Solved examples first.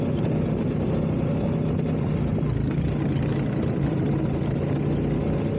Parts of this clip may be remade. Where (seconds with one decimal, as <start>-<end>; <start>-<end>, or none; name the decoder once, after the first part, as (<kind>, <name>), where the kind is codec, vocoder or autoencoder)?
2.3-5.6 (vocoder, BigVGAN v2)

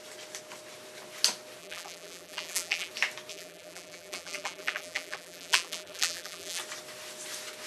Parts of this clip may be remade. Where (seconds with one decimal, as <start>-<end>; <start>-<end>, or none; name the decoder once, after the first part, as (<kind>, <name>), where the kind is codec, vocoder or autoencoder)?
1.6-2.9 (vocoder, BigVGAN v2); 3.3-6.6

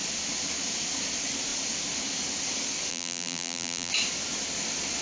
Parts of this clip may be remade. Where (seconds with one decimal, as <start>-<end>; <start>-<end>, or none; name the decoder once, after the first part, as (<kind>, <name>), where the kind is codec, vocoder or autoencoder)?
2.9-3.9 (vocoder, BigVGAN v2)

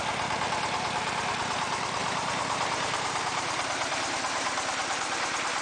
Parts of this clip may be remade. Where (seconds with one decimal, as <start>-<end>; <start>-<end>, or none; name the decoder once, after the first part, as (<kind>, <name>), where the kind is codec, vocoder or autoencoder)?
2.0-5.6 (vocoder, BigVGAN v2)

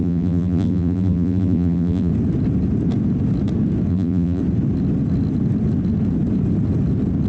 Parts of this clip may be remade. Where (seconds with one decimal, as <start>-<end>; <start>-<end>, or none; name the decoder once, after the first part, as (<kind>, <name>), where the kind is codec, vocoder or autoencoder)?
0.0-2.1 (vocoder, BigVGAN v2); 3.9-4.4

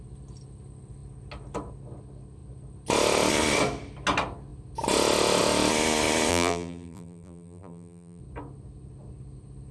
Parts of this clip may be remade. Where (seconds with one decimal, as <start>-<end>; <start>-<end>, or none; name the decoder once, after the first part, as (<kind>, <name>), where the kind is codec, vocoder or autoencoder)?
6.3-8.2 (vocoder, BigVGAN v2)

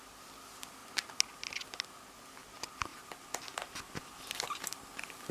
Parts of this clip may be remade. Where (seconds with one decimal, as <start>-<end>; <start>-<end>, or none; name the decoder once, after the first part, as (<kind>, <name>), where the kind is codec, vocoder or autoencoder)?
2.9-5.3 (vocoder, BigVGAN v2)